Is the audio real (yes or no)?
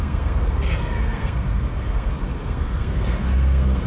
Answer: no